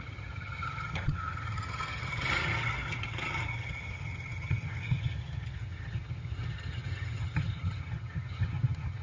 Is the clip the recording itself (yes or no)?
no